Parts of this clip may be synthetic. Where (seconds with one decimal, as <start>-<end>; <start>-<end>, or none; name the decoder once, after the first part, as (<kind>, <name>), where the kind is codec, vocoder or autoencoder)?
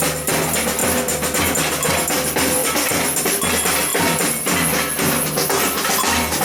none